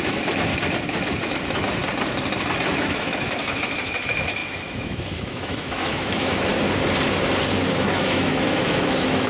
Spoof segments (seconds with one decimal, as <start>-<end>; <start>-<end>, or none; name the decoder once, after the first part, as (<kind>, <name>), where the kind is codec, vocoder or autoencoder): 0.0-0.5 (autoencoder, DAC-VAE); 1.2-1.8; 2.6-6.5; 7.7-9.3